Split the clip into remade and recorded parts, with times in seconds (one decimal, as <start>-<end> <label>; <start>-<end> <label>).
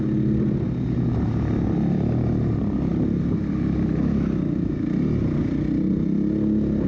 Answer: 0.0-6.9 recorded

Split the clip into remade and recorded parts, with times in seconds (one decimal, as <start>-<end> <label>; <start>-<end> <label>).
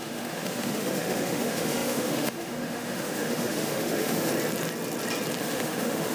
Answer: 0.0-4.3 remade; 4.3-5.4 recorded; 5.4-6.1 remade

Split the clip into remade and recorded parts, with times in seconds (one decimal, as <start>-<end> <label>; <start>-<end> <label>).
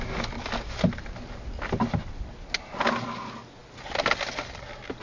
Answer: 0.0-5.0 recorded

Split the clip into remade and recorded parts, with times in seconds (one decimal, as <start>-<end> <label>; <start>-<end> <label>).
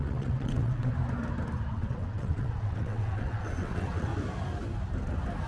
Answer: 0.0-0.9 remade; 0.9-1.7 recorded; 1.7-4.1 remade; 4.1-5.5 recorded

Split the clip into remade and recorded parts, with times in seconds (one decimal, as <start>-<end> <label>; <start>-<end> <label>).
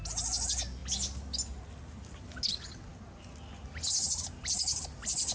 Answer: 0.0-5.3 recorded